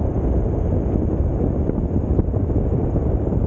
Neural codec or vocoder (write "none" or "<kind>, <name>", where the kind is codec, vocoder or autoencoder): none